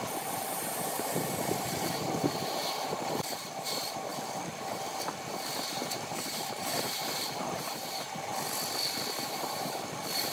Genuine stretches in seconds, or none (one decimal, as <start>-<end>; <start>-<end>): 4.1-5.7; 8.3-9.2